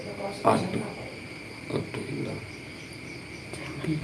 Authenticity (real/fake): real